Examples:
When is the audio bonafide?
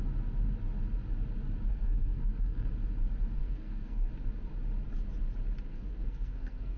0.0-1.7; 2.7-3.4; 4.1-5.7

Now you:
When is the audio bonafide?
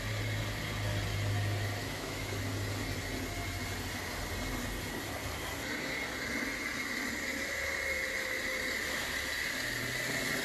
0.0-1.8; 2.4-10.4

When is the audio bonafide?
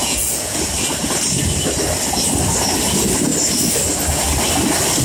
0.6-5.0